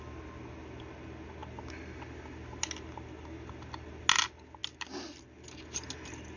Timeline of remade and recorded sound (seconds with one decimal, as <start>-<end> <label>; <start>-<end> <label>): 0.0-6.4 recorded